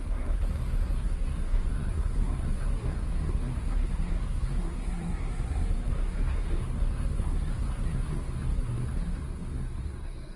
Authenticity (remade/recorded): remade